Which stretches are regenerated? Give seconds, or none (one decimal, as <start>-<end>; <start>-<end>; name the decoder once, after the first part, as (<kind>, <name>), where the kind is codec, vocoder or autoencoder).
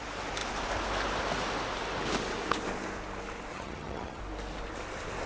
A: 3.5-4.2 (vocoder, HiFi-GAN)